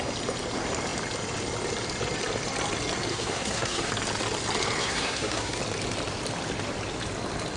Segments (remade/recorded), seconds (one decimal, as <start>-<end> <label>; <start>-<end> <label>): 0.0-3.1 recorded; 3.1-3.9 remade; 3.9-4.8 recorded; 4.8-5.6 remade; 5.6-7.6 recorded

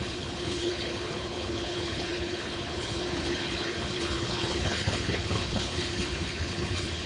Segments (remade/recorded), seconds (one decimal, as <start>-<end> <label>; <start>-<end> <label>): 0.0-7.1 remade

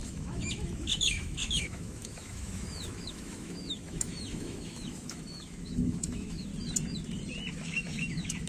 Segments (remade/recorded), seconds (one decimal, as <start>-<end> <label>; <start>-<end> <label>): 0.0-6.5 remade; 6.5-7.5 recorded; 7.5-8.5 remade

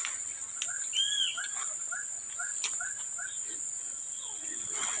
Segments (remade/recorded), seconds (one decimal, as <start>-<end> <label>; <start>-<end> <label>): 0.0-3.8 recorded; 3.8-5.0 remade

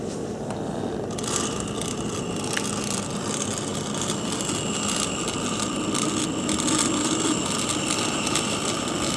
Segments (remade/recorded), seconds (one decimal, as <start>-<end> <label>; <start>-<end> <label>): 0.0-9.2 recorded

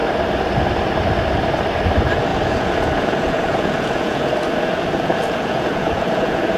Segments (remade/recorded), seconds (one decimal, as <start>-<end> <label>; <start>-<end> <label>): 0.0-2.3 recorded; 2.3-6.6 remade